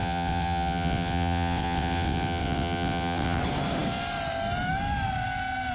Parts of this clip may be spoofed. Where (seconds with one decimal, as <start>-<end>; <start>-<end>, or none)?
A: 0.0-3.4